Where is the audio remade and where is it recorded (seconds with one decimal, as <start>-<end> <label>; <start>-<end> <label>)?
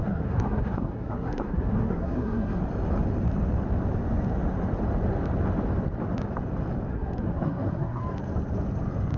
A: 0.0-2.6 remade; 2.6-6.9 recorded; 6.9-8.0 remade; 8.0-9.2 recorded